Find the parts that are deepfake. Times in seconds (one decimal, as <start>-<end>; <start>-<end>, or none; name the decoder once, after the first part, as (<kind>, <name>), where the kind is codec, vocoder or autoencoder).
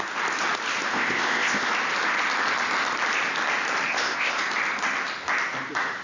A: 0.9-1.7 (codec, ZipCodec); 3.9-4.4